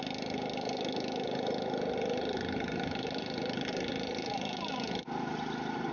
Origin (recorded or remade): recorded